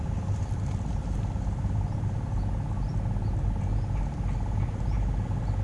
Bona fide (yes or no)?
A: yes